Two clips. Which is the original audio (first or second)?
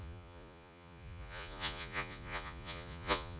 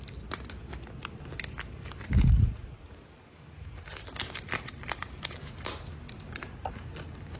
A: second